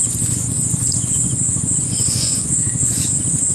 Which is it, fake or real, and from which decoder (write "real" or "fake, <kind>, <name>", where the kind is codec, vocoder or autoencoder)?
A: fake, vocoder, Vocos